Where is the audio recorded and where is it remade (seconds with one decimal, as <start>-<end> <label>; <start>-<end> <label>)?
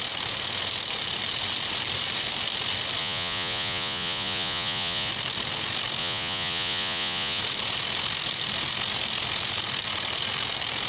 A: 0.0-3.0 recorded; 3.0-5.1 remade; 5.1-6.0 recorded; 6.0-7.4 remade; 7.4-10.9 recorded